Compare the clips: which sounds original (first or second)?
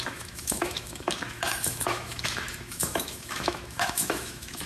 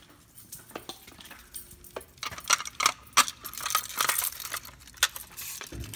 second